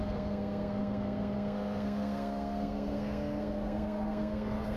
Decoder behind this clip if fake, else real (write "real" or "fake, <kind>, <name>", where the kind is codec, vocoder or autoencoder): fake, codec, SNAC